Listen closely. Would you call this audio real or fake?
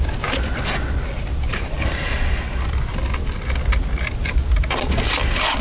real